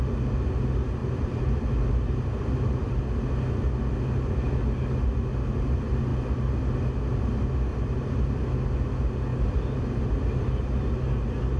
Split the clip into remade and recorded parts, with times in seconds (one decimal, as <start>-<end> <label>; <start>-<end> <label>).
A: 0.0-1.0 recorded; 1.0-3.0 remade; 3.0-7.7 recorded; 7.7-8.4 remade; 8.4-9.3 recorded; 9.3-10.9 remade; 10.9-11.6 recorded